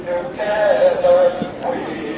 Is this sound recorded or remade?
remade